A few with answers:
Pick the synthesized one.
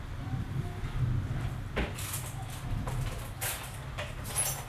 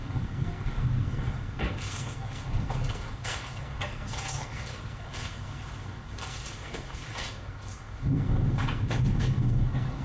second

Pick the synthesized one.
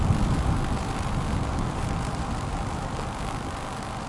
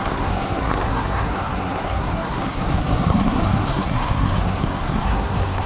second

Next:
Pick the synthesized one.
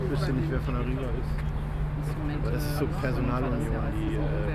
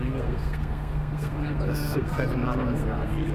second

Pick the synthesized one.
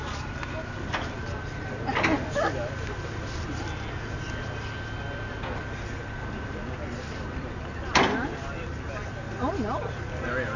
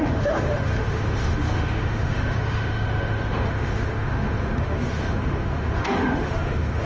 second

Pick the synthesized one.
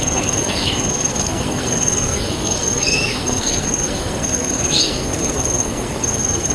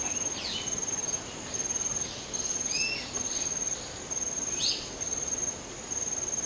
first